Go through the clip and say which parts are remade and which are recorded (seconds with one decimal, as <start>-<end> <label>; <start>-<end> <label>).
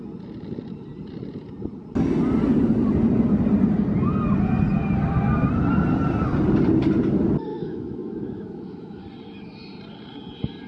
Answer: 0.0-7.5 recorded; 7.5-9.0 remade; 9.0-10.7 recorded